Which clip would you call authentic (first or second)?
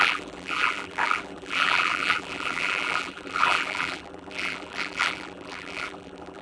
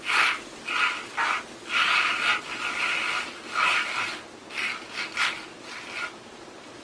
second